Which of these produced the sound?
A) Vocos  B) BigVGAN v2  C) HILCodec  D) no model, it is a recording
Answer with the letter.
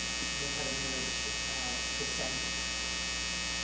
D